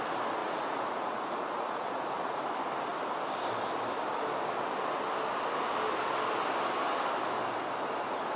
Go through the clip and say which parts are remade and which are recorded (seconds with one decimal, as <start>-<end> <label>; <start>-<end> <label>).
0.0-0.4 recorded; 0.4-2.4 remade; 2.4-8.4 recorded